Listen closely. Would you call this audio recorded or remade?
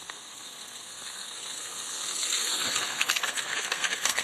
remade